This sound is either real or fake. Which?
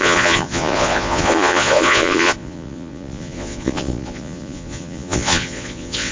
fake